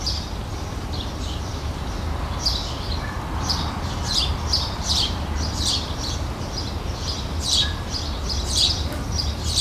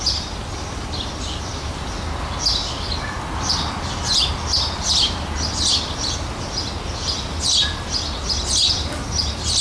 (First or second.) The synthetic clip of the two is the first